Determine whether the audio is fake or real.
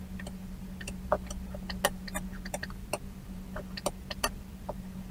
real